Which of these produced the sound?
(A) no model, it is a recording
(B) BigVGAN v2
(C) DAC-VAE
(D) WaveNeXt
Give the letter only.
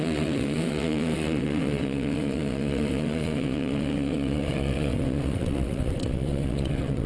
D